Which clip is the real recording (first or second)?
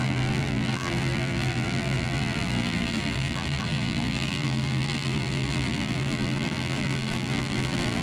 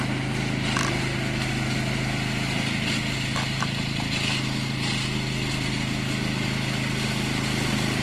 second